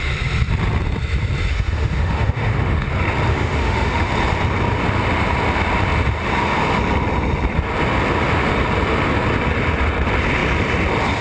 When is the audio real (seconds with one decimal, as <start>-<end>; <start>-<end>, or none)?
0.0-1.5; 2.9-3.3; 4.1-11.2